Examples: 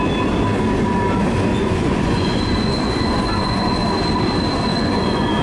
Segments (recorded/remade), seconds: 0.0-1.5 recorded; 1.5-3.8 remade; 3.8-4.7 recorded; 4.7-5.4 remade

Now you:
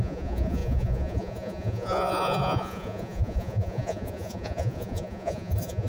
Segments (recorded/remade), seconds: 0.0-5.9 remade

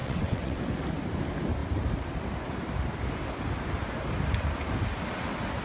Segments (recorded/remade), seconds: 0.0-0.6 remade; 0.6-5.6 recorded

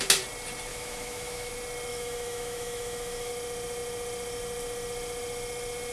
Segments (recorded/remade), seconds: 0.0-0.7 recorded; 0.7-1.5 remade; 1.5-1.9 recorded; 1.9-3.3 remade; 3.3-5.9 recorded

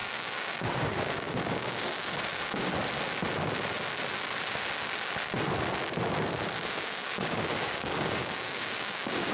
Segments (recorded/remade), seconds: 0.0-2.7 remade; 2.7-6.7 recorded; 6.7-9.3 remade

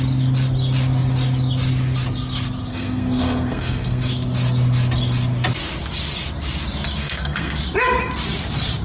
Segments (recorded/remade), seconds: 0.0-2.7 recorded; 2.7-4.1 remade; 4.1-7.0 recorded; 7.0-7.6 remade; 7.6-8.8 recorded